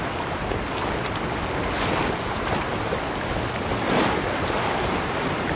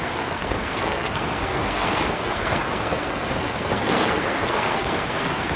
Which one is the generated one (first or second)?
second